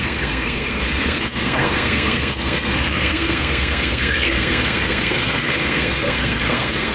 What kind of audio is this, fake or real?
fake